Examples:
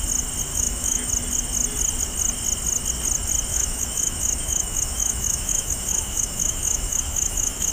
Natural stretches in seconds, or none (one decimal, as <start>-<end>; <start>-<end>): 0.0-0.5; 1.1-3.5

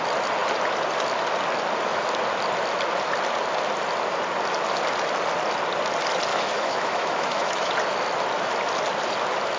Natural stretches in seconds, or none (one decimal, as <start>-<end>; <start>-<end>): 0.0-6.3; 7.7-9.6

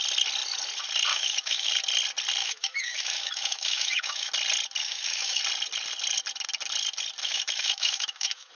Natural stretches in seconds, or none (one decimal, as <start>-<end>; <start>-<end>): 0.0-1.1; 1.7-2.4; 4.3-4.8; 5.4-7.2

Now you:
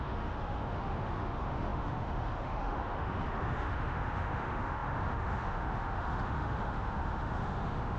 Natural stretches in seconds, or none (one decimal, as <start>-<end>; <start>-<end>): none